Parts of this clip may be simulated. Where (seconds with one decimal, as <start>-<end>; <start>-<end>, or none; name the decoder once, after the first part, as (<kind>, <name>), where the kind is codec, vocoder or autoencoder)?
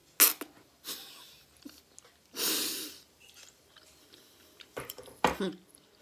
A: 2.4-5.5 (vocoder, BigVGAN v2)